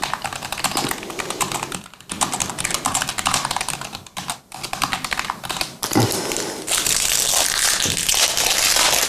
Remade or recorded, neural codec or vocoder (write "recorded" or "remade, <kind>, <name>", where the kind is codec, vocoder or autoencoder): recorded